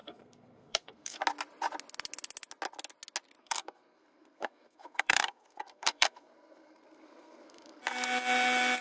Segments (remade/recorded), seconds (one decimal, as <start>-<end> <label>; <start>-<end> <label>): 0.0-1.2 remade; 1.2-3.4 recorded; 3.4-7.8 remade; 7.8-8.8 recorded